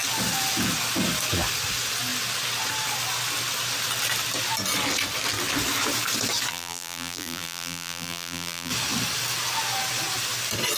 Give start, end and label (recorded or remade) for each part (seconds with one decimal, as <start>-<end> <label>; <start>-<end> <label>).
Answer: 0.0-6.5 recorded; 6.5-8.7 remade; 8.7-10.8 recorded

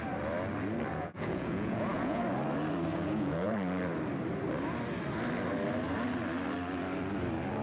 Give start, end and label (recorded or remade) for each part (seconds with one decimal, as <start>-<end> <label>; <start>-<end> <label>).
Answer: 0.0-0.9 recorded; 0.9-2.2 remade; 2.2-2.9 recorded; 2.9-3.5 remade; 3.5-7.6 recorded

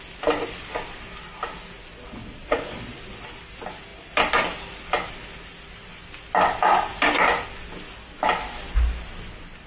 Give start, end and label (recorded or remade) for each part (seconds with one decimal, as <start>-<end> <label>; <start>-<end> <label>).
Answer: 0.0-2.2 recorded; 2.2-2.7 remade; 2.7-9.7 recorded

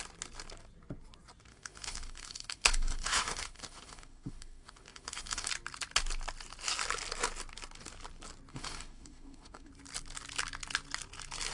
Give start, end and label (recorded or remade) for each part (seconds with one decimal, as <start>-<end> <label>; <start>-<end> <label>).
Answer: 0.0-1.5 recorded; 1.5-5.5 remade; 5.5-8.5 recorded; 8.5-9.7 remade; 9.7-11.5 recorded

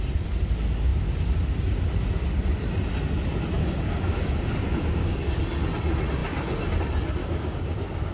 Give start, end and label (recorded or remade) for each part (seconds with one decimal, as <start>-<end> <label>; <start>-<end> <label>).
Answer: 0.0-3.6 recorded; 3.6-5.4 remade; 5.4-7.2 recorded; 7.2-8.1 remade

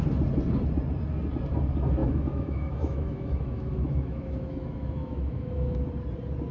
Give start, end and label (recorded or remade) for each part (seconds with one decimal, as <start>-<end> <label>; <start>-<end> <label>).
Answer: 0.0-2.0 recorded; 2.0-5.9 remade; 5.9-6.5 recorded

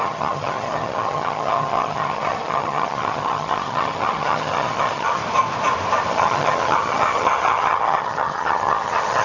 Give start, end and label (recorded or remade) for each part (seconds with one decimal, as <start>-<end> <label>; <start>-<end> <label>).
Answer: 0.0-5.2 remade; 5.2-6.1 recorded; 6.1-9.2 remade

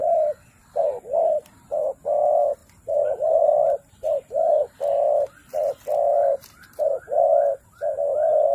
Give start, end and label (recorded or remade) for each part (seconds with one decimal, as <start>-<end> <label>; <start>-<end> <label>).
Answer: 0.0-2.0 remade; 2.0-2.6 recorded; 2.6-4.6 remade; 4.6-6.2 recorded; 6.2-7.2 remade; 7.2-8.5 recorded